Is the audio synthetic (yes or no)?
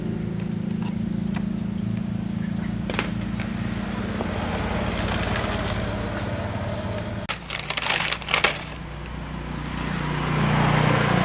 no